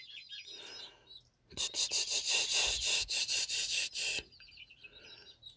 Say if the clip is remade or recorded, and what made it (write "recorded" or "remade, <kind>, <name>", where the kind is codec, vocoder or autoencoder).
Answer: recorded